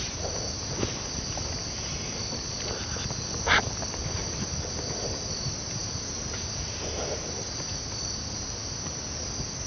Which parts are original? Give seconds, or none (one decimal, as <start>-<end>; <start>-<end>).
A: 0.0-5.8; 7.8-9.7